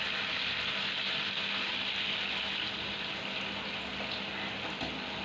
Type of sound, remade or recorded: recorded